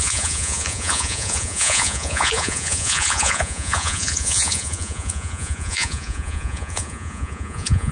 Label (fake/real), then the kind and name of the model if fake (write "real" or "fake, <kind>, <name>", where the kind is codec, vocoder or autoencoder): fake, vocoder, Vocos